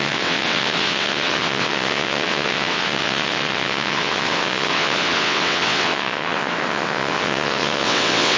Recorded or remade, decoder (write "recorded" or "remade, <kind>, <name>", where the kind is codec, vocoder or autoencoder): remade, vocoder, WaveNeXt